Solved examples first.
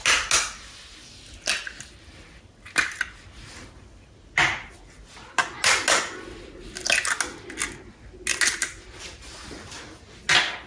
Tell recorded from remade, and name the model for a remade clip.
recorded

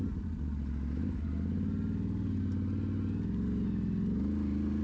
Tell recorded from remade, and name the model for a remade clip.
recorded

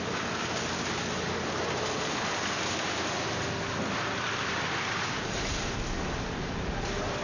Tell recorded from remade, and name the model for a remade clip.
recorded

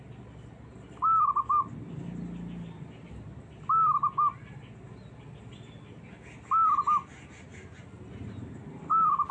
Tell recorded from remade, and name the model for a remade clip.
recorded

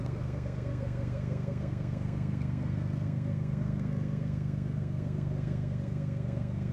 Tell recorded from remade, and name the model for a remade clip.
remade, codec, SNAC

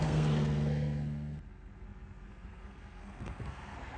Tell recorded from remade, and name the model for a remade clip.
remade, codec, SNAC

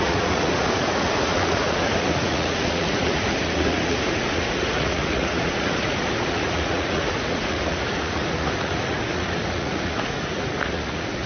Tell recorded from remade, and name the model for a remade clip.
remade, vocoder, Vocos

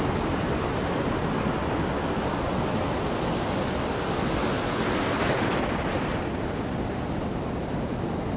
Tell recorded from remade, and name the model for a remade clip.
recorded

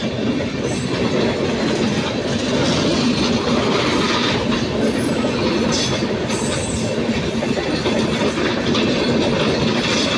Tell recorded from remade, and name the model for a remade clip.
recorded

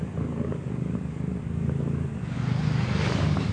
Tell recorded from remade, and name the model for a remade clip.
remade, codec, DAC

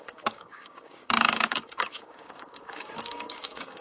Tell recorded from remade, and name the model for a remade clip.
remade, codec, DAC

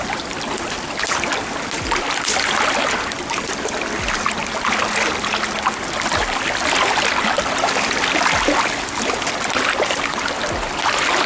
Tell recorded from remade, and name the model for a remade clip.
recorded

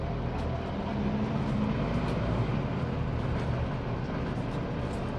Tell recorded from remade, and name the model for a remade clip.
recorded